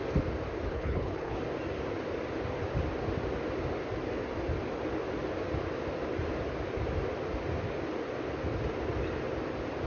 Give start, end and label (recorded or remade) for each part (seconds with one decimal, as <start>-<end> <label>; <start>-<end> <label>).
0.0-0.7 recorded; 0.7-1.4 remade; 1.4-9.9 recorded